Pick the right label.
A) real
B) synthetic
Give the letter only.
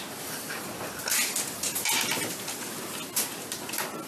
A